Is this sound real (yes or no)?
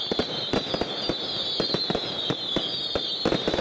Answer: yes